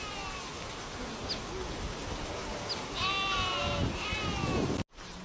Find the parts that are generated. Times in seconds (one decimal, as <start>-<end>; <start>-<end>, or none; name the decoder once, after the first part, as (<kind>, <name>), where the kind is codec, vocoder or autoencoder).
none